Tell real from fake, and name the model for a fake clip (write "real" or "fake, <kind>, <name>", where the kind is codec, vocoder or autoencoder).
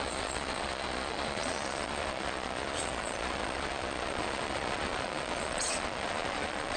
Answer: fake, vocoder, Vocos